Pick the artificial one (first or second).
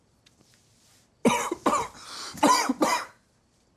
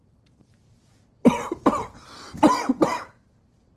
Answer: second